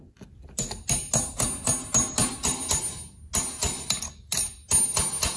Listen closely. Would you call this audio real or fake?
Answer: real